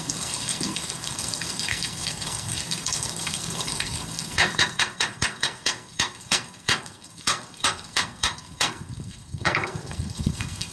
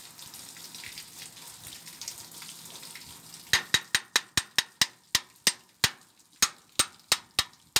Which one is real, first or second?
second